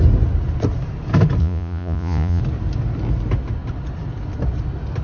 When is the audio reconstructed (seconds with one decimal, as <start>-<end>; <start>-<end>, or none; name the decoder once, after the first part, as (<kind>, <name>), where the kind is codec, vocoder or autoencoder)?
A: 1.4-2.4 (vocoder, Vocos)